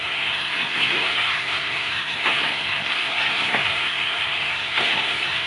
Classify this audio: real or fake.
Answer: fake